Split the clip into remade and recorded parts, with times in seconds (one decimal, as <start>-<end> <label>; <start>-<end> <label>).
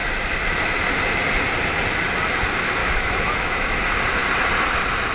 0.0-2.8 recorded; 2.8-3.8 remade; 3.8-5.1 recorded